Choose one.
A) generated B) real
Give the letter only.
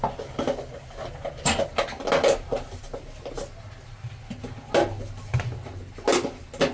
B